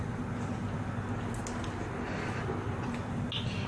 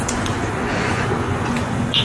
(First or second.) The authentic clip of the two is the first